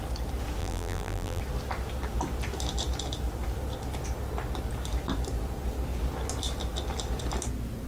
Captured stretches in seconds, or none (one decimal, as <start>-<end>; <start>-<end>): 0.0-0.6; 1.4-7.9